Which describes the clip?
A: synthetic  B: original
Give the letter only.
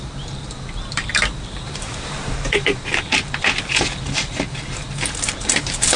A